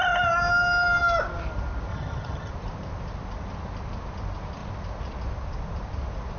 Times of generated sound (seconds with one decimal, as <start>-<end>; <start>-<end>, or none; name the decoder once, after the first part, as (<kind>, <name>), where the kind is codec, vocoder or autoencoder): 1.9-2.5 (vocoder, HiFi-GAN)